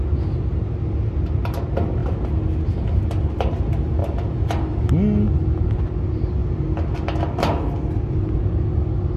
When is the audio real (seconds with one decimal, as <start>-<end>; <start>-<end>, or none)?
0.0-4.0; 4.9-9.2